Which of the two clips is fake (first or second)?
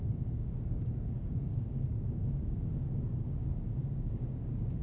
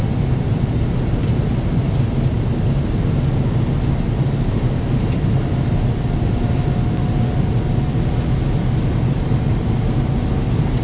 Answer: first